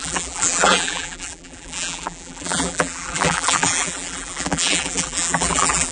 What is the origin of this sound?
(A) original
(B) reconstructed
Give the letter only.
B